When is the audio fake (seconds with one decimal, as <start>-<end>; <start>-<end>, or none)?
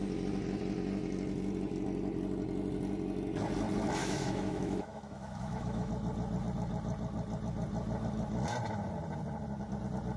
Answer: 4.0-5.9